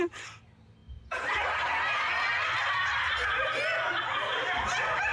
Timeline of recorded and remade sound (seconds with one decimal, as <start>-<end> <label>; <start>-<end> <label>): 0.0-5.1 recorded